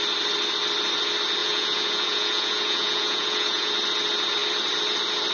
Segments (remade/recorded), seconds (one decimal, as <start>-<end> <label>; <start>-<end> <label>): 0.0-1.4 recorded; 1.4-3.7 remade; 3.7-5.3 recorded